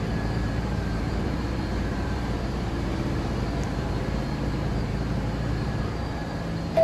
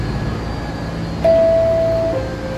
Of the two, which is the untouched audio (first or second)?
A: second